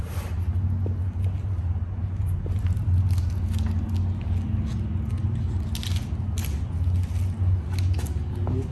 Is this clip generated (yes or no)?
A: no